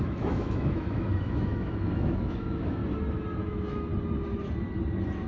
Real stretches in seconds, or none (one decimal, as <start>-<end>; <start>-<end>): 2.8-3.4; 3.9-5.3